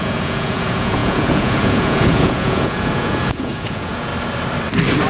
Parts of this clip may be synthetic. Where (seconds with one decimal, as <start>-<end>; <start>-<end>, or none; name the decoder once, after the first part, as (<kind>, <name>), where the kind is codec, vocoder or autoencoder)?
0.0-4.1 (vocoder, Vocos)